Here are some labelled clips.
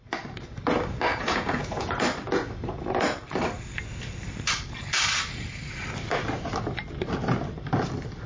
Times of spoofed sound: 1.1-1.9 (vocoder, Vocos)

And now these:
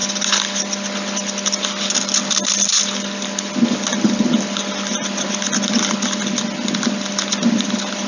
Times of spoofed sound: none

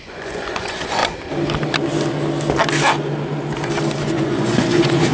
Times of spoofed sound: 0.0-1.0 (vocoder, Vocos); 4.1-5.1

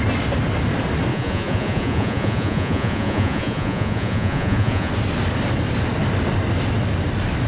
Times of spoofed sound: 1.1-4.9 (vocoder, Vocos)

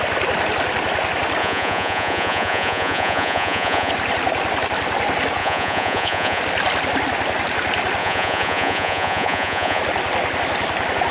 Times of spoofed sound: 1.4-3.9 (vocoder, Vocos); 5.4-6.4; 8.0-9.8

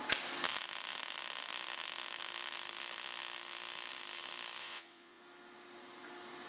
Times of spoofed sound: 4.6-5.2 (vocoder, Vocos)

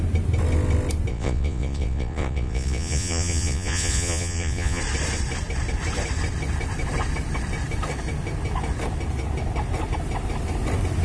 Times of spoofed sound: 1.1-4.8 (vocoder, Vocos)